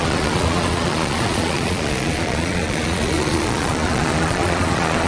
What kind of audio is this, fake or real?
fake